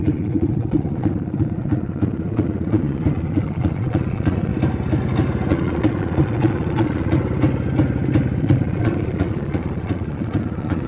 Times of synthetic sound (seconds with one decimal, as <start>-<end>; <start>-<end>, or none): 0.0-4.5; 5.5-7.2; 8.4-10.9